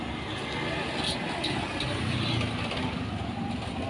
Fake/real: real